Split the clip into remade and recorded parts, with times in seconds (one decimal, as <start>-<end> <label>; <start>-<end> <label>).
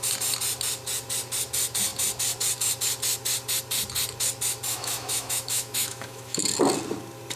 0.0-4.7 recorded; 4.7-6.4 remade; 6.4-7.4 recorded